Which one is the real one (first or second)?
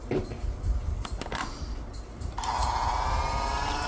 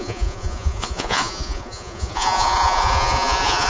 first